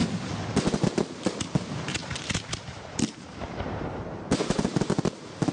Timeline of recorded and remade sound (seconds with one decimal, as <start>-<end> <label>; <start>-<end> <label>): 0.0-2.0 recorded; 2.0-5.5 remade